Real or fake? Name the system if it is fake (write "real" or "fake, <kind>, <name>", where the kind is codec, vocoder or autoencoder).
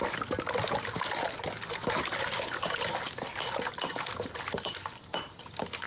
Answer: real